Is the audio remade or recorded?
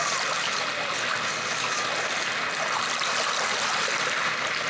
recorded